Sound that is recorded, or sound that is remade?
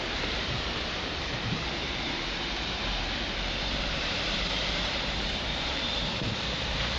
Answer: remade